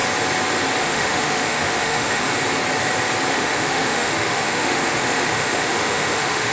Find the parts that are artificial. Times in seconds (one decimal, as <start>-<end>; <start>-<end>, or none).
0.8-2.3; 3.3-6.5